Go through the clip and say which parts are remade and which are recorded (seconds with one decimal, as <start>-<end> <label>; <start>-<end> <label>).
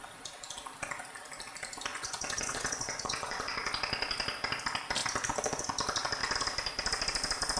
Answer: 0.0-1.9 recorded; 1.9-3.7 remade; 3.7-7.6 recorded